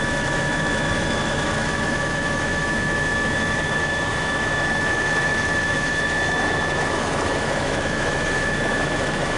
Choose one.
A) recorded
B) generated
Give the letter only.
B